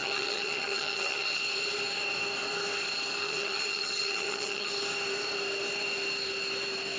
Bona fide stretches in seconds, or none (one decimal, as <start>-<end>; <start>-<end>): 1.4-3.2; 4.7-7.0